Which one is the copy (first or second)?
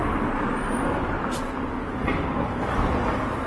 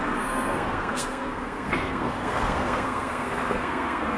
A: second